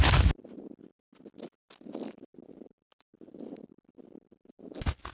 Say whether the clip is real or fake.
real